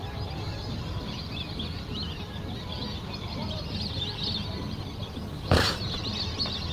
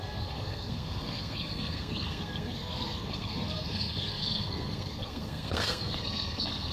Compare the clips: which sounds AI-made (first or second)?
second